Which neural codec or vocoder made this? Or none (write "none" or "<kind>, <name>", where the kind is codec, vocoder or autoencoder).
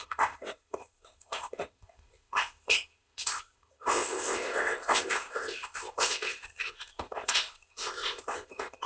codec, ZipCodec